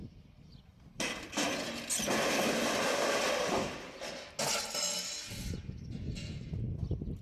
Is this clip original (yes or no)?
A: yes